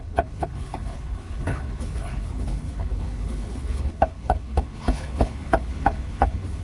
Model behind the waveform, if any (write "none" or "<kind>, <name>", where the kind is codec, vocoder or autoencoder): codec, HILCodec